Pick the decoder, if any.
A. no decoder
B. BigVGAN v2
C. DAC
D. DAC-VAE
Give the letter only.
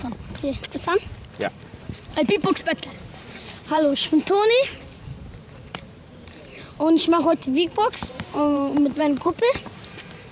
B